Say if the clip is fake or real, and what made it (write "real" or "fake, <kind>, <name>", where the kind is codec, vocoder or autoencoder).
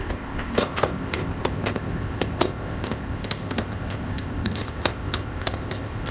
fake, codec, ZipCodec